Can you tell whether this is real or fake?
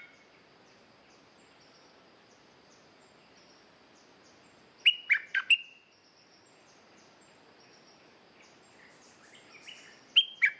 real